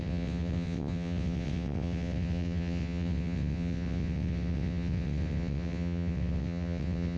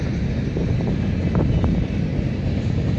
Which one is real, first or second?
second